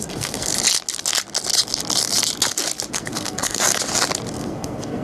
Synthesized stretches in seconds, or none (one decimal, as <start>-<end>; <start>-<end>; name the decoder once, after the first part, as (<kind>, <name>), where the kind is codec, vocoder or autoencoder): 0.0-0.5 (codec, SNAC); 2.9-3.7; 4.3-5.0